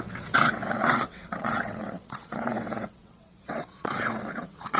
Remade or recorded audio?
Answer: remade